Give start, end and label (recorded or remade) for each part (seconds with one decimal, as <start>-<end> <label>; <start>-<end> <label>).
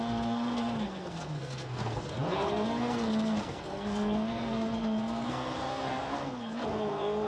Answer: 0.0-7.3 remade